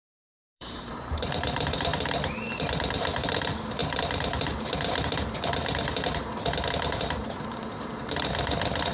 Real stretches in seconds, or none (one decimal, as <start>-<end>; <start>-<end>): none